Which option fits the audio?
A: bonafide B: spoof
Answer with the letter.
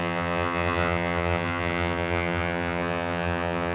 B